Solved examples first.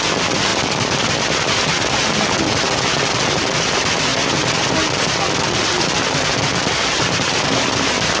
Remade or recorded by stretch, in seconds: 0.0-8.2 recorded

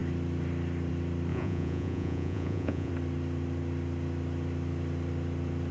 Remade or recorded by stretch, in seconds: 0.0-1.3 recorded; 1.3-2.9 remade; 2.9-5.7 recorded

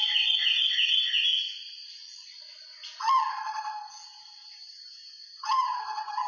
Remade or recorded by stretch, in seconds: 0.0-4.4 recorded; 4.4-5.8 remade; 5.8-6.3 recorded